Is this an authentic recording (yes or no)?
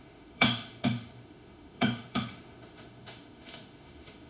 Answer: no